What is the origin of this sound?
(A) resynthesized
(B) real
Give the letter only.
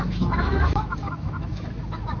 A